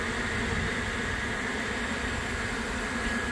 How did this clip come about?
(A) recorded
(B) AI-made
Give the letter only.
A